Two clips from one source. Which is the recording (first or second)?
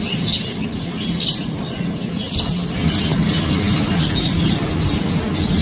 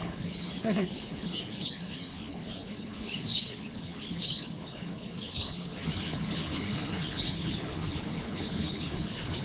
first